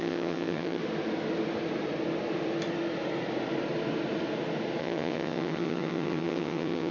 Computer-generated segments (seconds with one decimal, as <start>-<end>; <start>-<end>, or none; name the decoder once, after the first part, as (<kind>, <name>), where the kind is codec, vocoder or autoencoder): 0.0-0.8 (vocoder, HiFi-GAN); 4.8-6.9